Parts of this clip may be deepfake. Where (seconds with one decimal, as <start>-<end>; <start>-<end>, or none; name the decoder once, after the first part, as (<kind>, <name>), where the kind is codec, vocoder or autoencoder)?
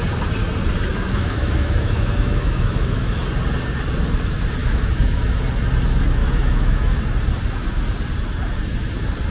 0.9-3.2 (autoencoder, DAC-VAE); 4.6-5.2; 6.2-7.0